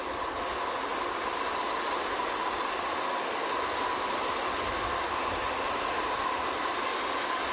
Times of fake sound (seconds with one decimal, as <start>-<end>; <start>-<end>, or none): none